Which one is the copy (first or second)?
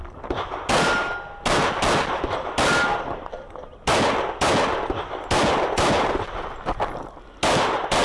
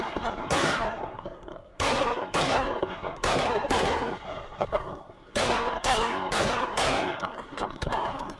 second